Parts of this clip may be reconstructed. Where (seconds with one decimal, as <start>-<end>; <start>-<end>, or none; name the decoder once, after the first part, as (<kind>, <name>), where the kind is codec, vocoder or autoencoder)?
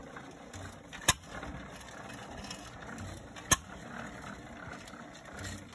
none